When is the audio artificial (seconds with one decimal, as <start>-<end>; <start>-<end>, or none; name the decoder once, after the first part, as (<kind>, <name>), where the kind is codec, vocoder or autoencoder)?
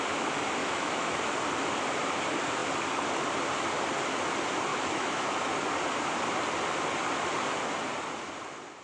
0.6-1.2 (autoencoder, DAC-VAE); 4.7-5.5